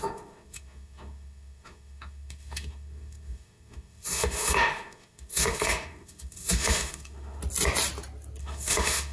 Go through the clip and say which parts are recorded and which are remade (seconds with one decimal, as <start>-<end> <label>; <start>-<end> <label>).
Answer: 0.0-7.4 remade; 7.4-8.4 recorded; 8.4-9.1 remade